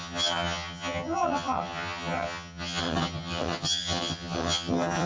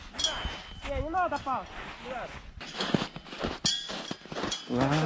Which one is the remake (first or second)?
first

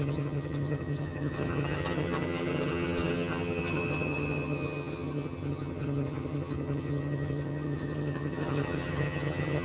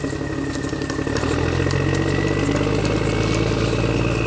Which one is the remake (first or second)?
first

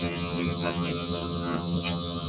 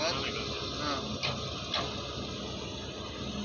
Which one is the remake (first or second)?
first